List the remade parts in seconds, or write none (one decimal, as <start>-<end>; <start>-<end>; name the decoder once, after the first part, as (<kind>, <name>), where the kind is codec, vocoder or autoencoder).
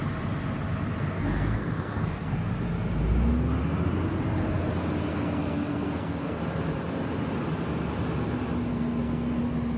1.0-2.5 (codec, SNAC); 5.1-6.4; 8.7-9.4